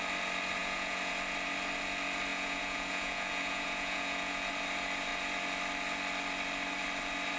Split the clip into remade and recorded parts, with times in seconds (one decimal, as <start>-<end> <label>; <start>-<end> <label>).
0.0-0.6 recorded; 0.6-1.1 remade; 1.1-2.3 recorded; 2.3-4.5 remade; 4.5-7.4 recorded